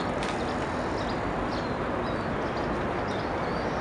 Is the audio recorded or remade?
recorded